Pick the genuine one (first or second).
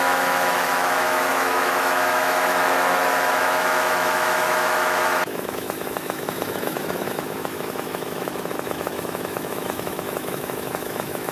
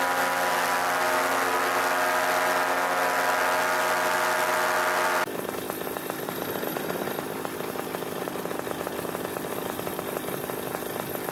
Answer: second